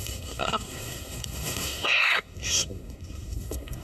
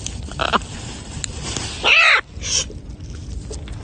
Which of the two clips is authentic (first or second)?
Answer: second